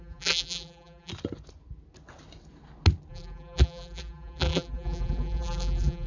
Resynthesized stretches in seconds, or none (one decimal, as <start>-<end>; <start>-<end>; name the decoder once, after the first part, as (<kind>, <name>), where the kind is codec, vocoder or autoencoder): 0.0-1.1 (vocoder, BigVGAN v2); 3.1-6.1